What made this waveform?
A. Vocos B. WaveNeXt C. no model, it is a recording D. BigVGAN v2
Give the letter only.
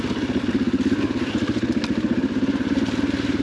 C